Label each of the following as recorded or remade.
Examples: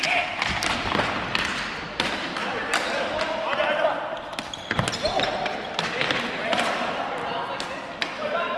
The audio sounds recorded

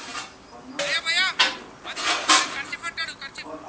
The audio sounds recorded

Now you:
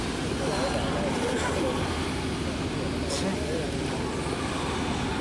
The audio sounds recorded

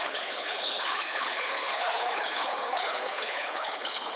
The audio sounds remade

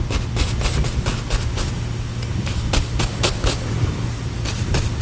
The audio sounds recorded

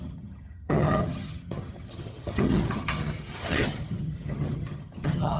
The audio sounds remade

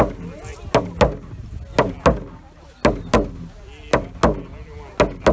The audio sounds recorded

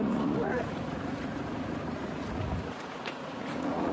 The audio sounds remade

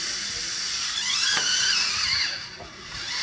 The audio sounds remade